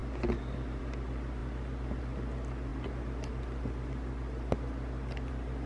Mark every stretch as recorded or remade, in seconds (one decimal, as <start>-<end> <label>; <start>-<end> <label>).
0.0-5.7 recorded